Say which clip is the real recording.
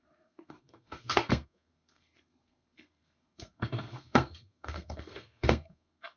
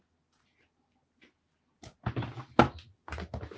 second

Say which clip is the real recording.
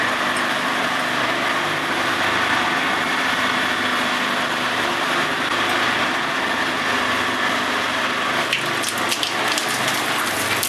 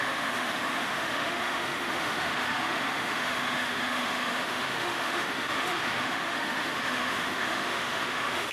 first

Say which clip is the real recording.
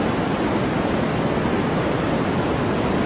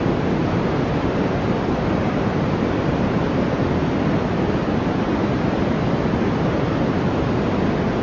first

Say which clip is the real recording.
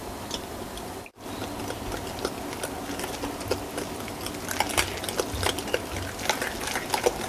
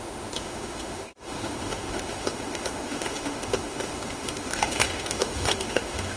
first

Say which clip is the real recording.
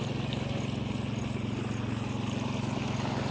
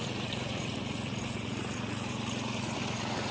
first